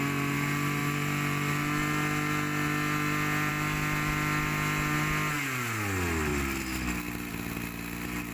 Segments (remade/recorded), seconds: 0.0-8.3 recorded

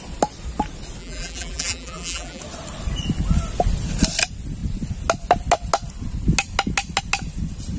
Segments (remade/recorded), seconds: 0.0-1.0 recorded; 1.0-2.4 remade; 2.4-7.8 recorded

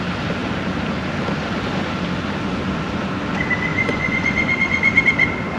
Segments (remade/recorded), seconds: 0.0-3.7 recorded; 3.7-5.0 remade; 5.0-5.6 recorded

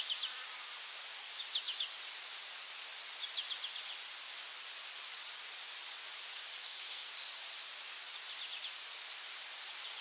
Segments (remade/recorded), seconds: 0.0-6.6 recorded; 6.6-7.1 remade; 7.1-10.0 recorded